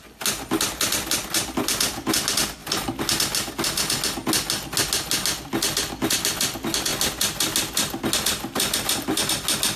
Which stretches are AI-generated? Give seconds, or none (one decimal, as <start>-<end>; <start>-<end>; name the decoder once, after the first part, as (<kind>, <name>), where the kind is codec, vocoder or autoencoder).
none